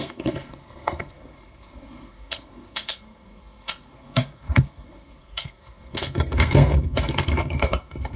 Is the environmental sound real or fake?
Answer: fake